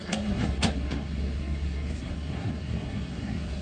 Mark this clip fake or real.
fake